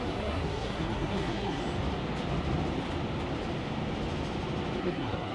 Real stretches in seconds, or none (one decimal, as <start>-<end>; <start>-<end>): 1.6-4.8